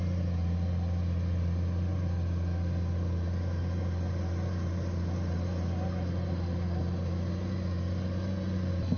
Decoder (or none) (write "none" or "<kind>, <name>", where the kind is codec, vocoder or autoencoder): none